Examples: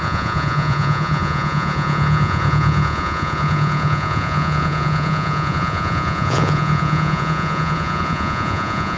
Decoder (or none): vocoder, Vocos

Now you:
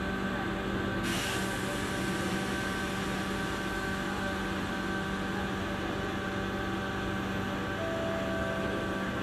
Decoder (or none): none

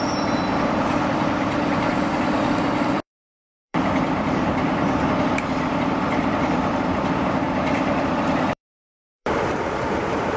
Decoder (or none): vocoder, BigVGAN v2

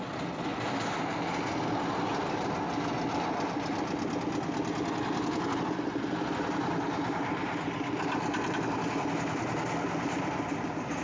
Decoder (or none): none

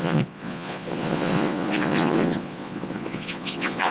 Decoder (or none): vocoder, Vocos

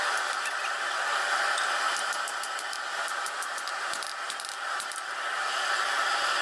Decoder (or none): none